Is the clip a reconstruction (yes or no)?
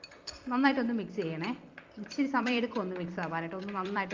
yes